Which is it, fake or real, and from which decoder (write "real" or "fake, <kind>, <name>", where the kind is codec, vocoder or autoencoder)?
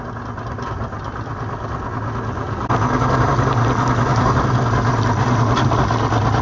real